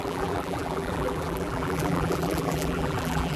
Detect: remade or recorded remade